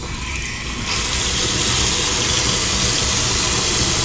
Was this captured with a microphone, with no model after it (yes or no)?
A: yes